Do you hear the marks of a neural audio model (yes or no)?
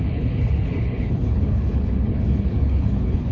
yes